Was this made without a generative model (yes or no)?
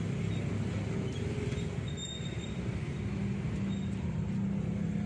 yes